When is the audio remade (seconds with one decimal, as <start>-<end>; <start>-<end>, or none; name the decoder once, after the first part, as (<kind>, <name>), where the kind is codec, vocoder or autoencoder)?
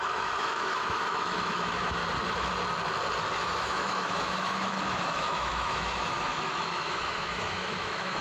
0.0-2.0 (autoencoder, DAC-VAE); 3.4-8.2